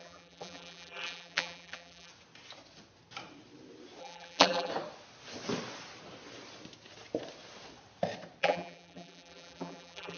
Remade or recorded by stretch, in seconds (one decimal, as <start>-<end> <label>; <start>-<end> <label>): 0.0-2.1 remade; 2.1-4.0 recorded; 4.0-4.7 remade; 4.7-8.4 recorded; 8.4-10.2 remade